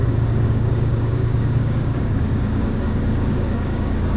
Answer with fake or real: fake